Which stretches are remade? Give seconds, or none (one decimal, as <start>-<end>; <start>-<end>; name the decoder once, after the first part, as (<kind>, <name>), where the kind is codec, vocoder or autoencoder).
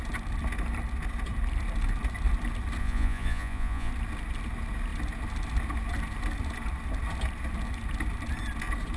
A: 2.8-3.9 (vocoder, Vocos)